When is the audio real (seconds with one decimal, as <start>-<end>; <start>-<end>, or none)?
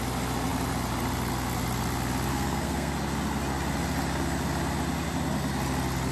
0.0-2.3; 2.9-6.1